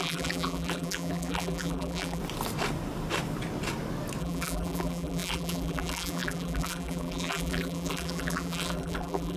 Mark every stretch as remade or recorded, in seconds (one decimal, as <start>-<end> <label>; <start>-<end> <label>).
0.0-2.2 remade; 2.2-4.2 recorded; 4.2-9.4 remade